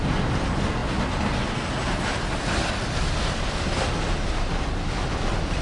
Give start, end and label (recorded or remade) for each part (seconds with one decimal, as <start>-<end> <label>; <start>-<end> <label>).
0.0-5.6 recorded